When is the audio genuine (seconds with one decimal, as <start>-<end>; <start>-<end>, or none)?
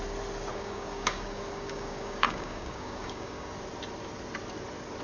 0.0-0.5; 3.5-5.0